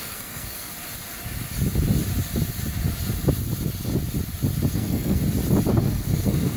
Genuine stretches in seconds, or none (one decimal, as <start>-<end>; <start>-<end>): 0.7-4.7; 5.2-5.7